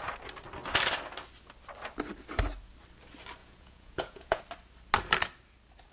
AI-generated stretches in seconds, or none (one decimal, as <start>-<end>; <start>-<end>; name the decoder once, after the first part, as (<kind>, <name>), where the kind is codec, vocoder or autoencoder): 3.4-4.4 (vocoder, Vocos)